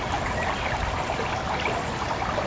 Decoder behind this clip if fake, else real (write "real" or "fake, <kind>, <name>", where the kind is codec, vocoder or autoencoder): real